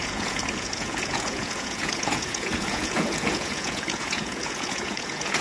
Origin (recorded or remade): remade